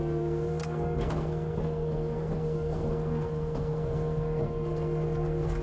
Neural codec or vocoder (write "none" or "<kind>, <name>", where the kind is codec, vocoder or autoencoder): codec, SNAC